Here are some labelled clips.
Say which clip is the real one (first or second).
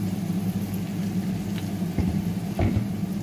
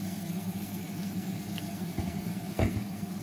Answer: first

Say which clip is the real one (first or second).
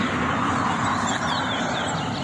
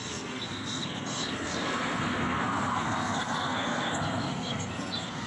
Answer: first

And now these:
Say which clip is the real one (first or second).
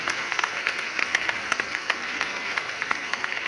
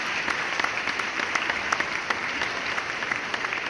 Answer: second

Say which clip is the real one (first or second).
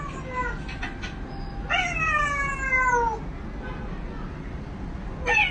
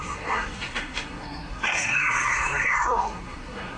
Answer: first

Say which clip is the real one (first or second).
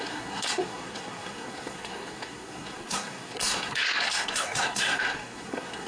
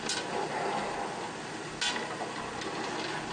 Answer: second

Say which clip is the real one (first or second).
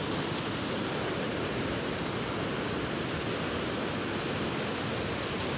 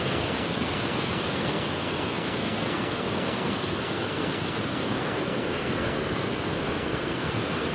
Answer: first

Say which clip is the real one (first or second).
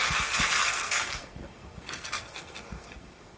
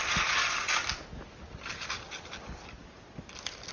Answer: second